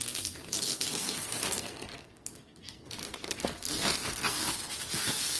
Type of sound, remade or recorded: remade